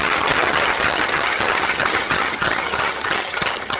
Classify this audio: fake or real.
fake